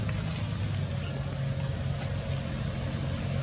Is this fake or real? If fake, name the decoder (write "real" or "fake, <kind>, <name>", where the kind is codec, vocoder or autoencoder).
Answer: real